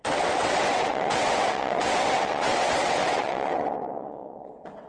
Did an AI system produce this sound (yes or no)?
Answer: yes